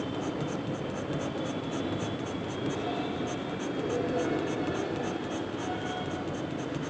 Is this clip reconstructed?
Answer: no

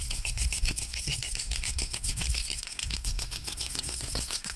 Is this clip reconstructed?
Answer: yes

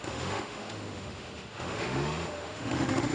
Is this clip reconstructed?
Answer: yes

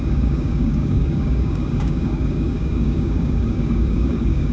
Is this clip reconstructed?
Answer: yes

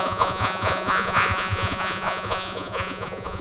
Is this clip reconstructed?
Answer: yes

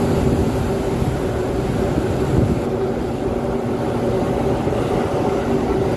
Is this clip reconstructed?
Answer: no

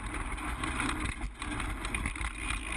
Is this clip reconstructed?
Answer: no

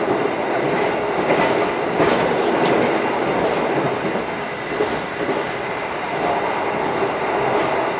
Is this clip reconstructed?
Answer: no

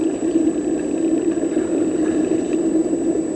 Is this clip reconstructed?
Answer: no